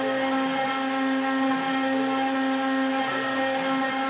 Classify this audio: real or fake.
real